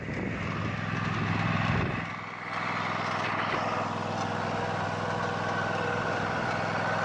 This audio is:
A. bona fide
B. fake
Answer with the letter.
A